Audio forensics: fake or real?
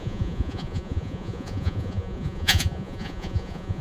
fake